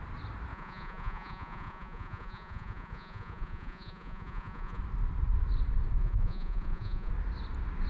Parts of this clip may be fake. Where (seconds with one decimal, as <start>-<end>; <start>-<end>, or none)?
0.5-4.8; 6.0-7.1